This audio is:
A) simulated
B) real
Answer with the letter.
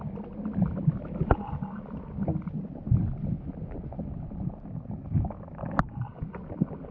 B